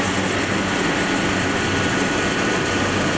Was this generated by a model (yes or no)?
no